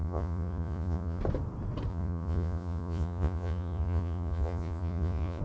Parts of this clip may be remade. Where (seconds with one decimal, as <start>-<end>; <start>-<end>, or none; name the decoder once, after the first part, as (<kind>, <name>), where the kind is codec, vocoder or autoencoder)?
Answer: 0.0-1.2 (vocoder, Vocos); 1.9-5.4